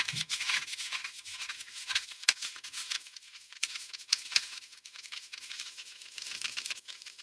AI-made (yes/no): yes